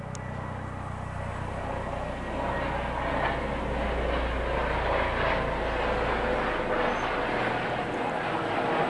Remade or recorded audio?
recorded